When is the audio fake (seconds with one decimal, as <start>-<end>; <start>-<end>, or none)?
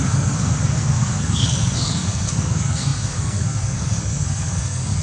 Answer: 0.0-5.0